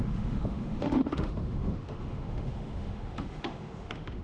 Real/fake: fake